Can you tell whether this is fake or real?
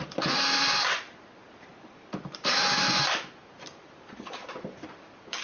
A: fake